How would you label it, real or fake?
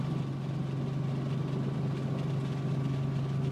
real